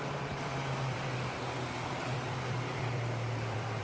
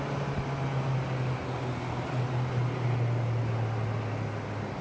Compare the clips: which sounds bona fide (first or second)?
second